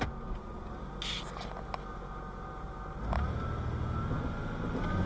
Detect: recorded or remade recorded